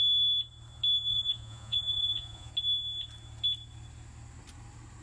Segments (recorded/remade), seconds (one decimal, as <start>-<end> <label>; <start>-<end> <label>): 0.0-1.1 recorded; 1.1-2.5 remade; 2.5-5.0 recorded